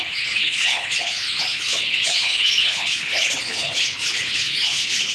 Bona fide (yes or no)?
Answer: no